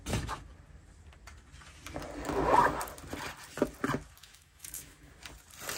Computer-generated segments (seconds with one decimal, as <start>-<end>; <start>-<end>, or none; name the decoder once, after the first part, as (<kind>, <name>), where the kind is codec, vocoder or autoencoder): 4.2-5.1 (autoencoder, DAC-VAE)